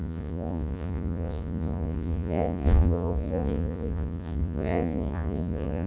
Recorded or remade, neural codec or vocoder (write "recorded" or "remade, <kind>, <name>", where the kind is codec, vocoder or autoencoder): remade, vocoder, Vocos